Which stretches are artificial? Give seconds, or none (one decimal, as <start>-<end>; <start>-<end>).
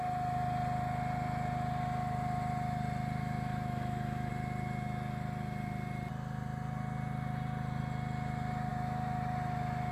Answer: 3.2-4.3; 8.7-9.9